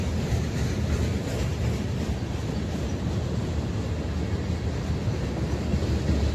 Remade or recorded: recorded